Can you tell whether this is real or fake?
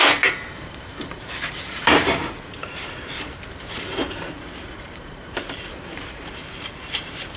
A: fake